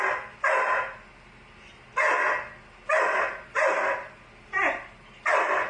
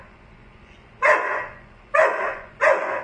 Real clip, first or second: first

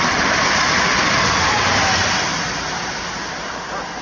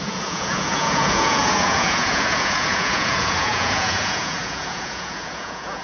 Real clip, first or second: first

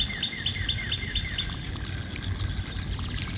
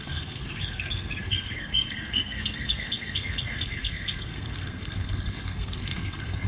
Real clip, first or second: first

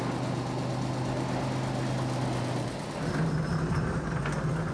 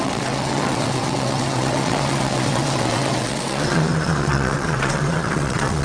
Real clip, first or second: first